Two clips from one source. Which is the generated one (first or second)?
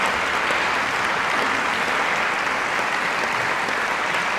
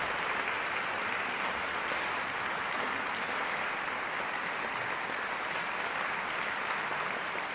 second